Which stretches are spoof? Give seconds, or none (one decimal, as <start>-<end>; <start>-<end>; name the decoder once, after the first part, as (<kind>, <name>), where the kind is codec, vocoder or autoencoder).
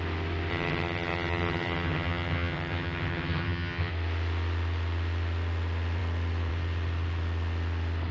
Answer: 0.5-3.9 (vocoder, HiFi-GAN)